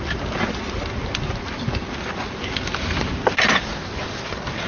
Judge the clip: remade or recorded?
recorded